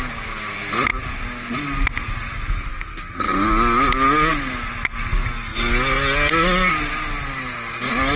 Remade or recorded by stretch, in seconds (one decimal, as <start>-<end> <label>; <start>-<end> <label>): 0.0-2.7 recorded; 2.7-3.5 remade; 3.5-8.2 recorded